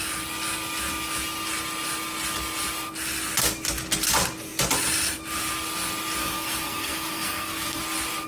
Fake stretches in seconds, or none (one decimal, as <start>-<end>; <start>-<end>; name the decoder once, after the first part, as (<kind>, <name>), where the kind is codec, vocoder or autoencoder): 6.2-7.8 (codec, SNAC)